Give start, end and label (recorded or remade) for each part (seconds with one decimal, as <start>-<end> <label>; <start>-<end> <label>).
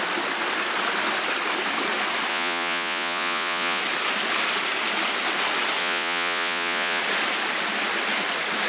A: 0.0-2.3 recorded; 2.3-3.8 remade; 3.8-5.8 recorded; 5.8-7.0 remade; 7.0-8.7 recorded